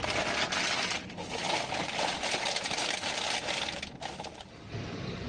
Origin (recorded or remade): recorded